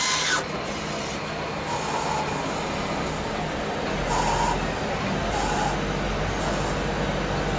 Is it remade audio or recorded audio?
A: recorded